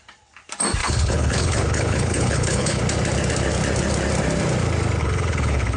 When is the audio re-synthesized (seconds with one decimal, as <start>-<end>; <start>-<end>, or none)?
0.8-2.8; 5.0-5.8